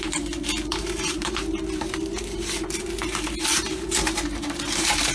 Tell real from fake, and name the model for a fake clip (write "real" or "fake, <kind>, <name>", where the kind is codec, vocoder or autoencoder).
fake, vocoder, BigVGAN v2